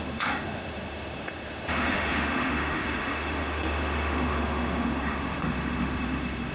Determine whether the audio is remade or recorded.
remade